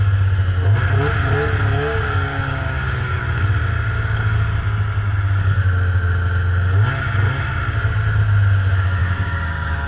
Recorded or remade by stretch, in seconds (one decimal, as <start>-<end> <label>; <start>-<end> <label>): 0.0-1.7 recorded; 1.7-3.2 remade; 3.2-9.0 recorded; 9.0-9.9 remade